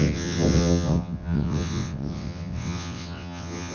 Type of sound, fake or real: fake